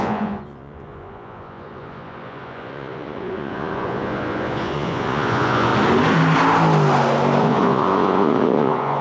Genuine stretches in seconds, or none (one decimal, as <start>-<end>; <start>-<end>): 5.7-7.4